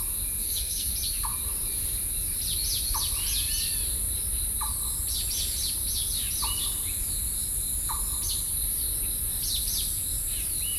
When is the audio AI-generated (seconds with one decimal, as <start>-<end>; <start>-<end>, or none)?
0.4-0.9